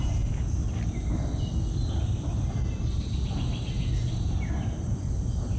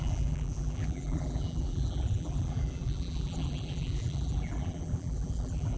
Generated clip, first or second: second